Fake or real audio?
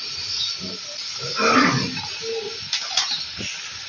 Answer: real